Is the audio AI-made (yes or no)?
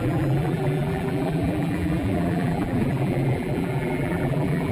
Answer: yes